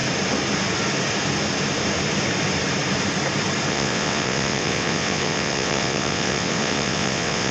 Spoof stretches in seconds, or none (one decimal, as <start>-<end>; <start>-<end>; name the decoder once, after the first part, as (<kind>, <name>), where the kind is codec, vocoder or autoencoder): 3.7-7.5 (vocoder, WaveNeXt)